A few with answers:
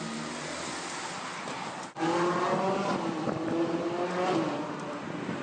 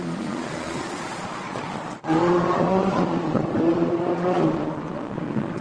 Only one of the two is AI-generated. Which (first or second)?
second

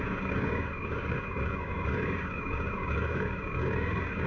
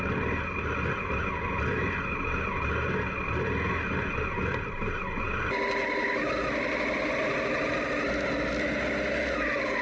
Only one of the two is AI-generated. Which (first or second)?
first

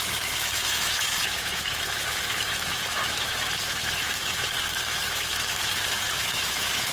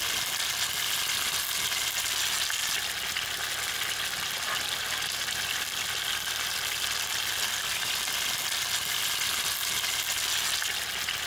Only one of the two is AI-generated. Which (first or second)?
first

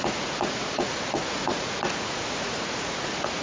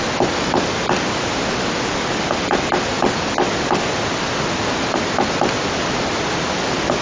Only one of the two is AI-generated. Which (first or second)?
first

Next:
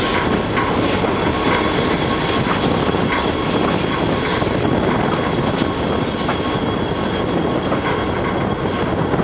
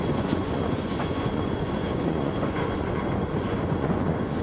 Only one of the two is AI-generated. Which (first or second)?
second